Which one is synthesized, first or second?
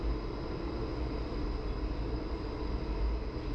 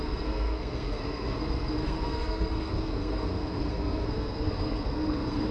second